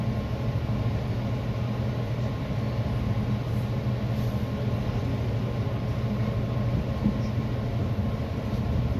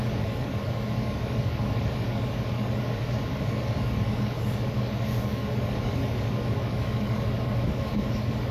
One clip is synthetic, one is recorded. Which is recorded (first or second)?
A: first